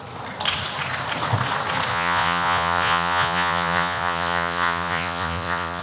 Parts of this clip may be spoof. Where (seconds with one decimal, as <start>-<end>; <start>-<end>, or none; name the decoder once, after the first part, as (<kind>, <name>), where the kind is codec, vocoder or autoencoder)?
1.9-5.8 (vocoder, Vocos)